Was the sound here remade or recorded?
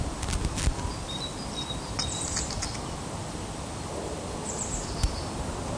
recorded